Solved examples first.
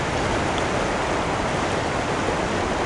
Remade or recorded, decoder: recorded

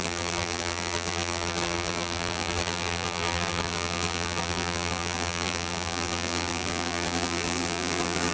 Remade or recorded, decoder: remade, vocoder, BigVGAN v2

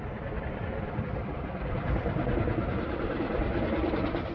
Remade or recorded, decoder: remade, vocoder, BigVGAN v2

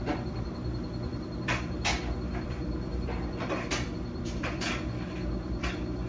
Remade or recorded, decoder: remade, vocoder, BigVGAN v2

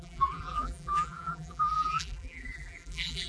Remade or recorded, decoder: remade, vocoder, BigVGAN v2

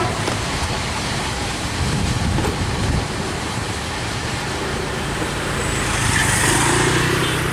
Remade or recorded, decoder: remade, vocoder, BigVGAN v2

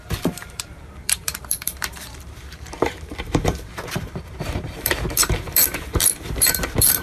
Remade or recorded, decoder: remade, vocoder, BigVGAN v2